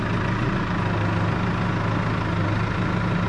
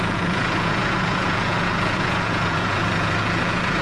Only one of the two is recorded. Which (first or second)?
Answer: first